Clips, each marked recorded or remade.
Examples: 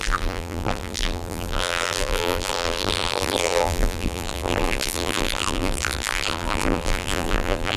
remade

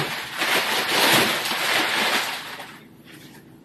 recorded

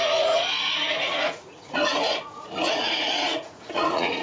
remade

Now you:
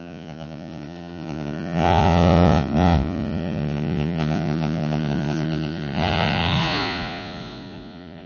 remade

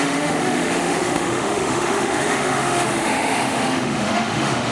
remade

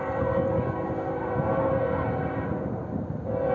recorded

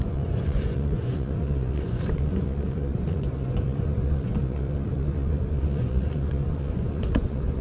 remade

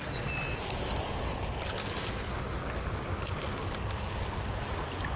recorded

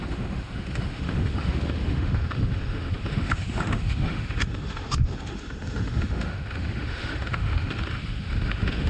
remade